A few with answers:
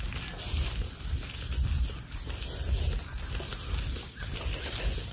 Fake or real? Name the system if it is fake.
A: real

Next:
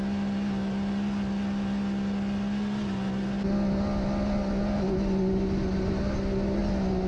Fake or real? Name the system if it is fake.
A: real